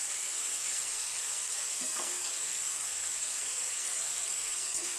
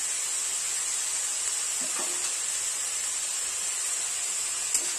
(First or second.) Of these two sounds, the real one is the second